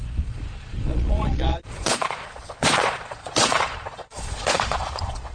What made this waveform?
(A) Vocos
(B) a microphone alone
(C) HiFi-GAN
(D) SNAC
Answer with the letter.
A